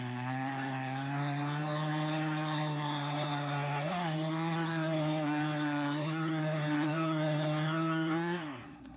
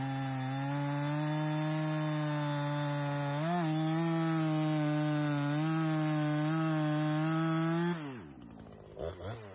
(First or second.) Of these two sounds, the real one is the second